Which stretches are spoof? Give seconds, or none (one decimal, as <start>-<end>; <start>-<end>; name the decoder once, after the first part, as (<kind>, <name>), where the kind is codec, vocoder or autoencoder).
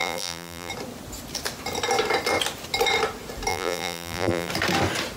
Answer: 0.0-0.7 (vocoder, BigVGAN v2); 3.5-4.5